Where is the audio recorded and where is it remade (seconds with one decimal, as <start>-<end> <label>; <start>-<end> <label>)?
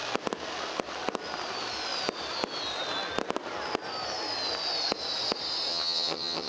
0.0-5.7 recorded; 5.7-6.5 remade